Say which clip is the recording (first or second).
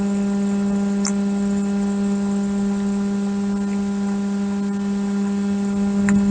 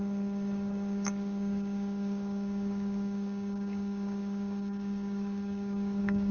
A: first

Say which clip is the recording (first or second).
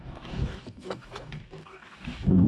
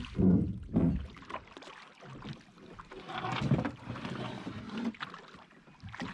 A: second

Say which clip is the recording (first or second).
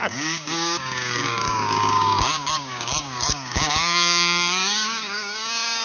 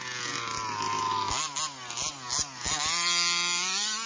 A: second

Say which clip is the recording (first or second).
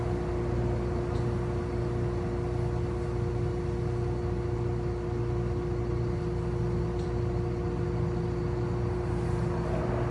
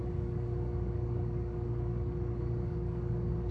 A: first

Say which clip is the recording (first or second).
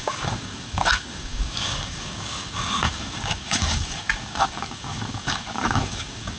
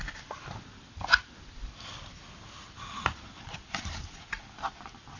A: second